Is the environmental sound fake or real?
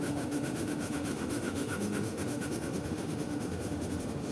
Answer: fake